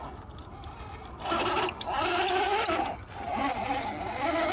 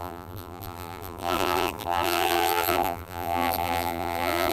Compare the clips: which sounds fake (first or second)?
second